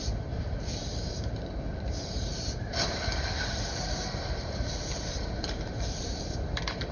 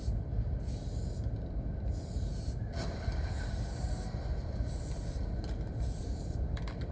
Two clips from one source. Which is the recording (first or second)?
second